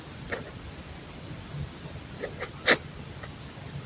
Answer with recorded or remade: recorded